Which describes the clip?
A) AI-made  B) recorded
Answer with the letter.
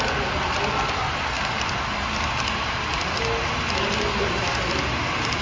B